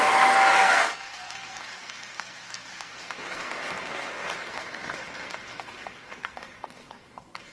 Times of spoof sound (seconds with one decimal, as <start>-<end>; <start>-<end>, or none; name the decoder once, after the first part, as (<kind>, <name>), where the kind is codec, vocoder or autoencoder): 0.0-7.5 (codec, SNAC)